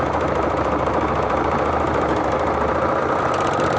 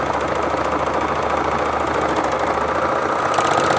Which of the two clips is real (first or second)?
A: second